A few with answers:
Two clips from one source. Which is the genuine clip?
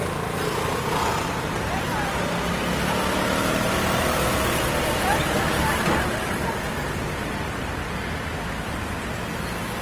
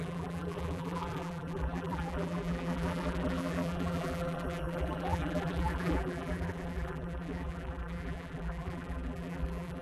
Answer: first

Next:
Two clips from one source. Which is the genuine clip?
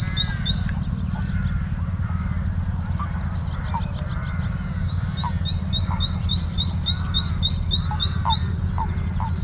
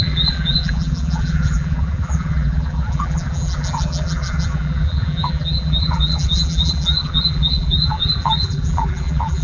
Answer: first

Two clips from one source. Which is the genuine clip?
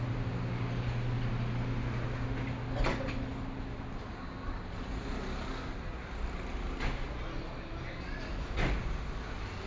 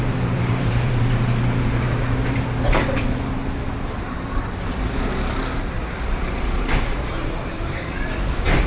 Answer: first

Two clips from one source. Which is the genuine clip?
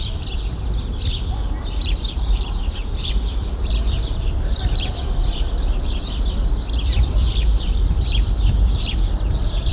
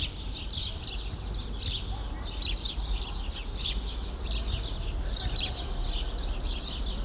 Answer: second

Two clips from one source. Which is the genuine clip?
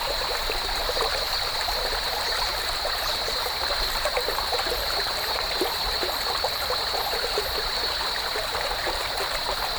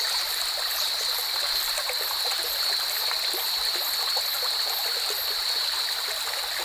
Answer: second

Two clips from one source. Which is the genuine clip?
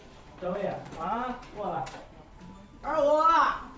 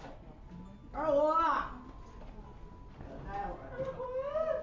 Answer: second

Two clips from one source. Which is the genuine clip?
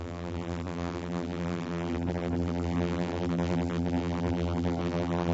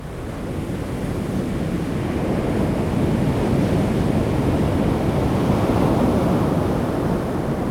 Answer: second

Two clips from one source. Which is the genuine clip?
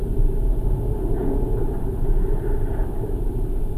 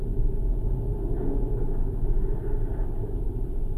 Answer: second